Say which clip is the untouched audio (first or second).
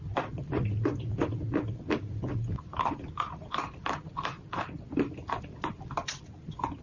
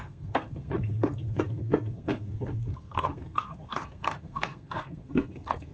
first